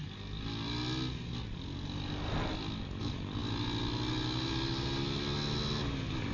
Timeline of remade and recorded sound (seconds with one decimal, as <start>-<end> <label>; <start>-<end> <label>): 0.0-6.3 recorded